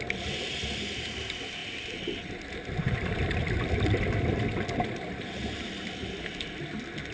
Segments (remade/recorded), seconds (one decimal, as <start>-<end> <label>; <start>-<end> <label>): 0.0-7.1 recorded